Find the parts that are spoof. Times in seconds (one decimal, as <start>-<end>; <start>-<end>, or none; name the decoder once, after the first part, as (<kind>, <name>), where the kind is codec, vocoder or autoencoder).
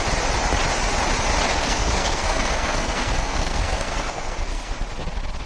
1.5-4.7 (codec, SNAC)